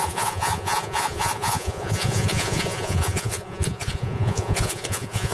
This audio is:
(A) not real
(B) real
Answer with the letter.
A